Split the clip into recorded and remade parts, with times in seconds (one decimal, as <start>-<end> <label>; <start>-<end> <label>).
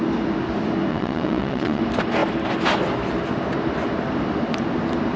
0.0-0.9 recorded; 0.9-1.8 remade; 1.8-5.2 recorded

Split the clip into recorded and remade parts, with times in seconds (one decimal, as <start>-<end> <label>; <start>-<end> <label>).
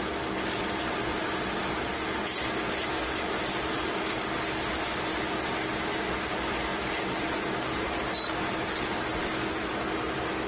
0.0-10.5 recorded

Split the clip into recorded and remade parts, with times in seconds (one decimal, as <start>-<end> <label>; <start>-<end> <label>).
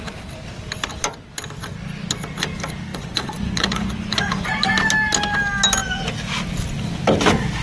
0.0-2.9 recorded; 2.9-4.5 remade; 4.5-7.6 recorded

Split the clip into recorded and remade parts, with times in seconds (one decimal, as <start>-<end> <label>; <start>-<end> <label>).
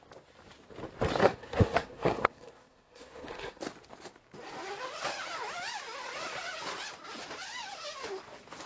0.0-1.2 recorded; 1.2-3.6 remade; 3.6-8.7 recorded